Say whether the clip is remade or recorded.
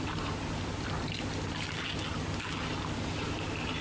recorded